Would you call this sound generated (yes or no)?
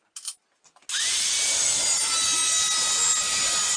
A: no